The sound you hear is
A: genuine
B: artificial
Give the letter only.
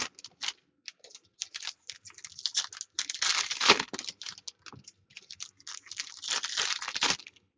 A